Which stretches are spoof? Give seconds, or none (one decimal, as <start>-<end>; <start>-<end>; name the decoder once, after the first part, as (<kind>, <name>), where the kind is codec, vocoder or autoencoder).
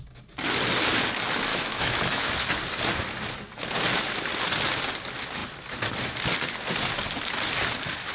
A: 1.5-2.3 (autoencoder, DAC-VAE)